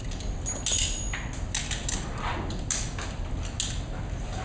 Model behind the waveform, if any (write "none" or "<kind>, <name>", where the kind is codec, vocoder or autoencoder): none